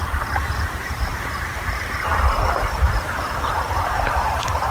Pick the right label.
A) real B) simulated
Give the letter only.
B